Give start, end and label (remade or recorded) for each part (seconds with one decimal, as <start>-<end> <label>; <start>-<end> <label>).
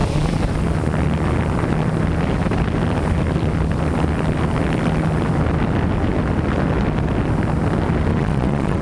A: 0.0-8.1 recorded; 8.1-8.8 remade